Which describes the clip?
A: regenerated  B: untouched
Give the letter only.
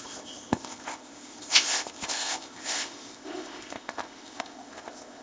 A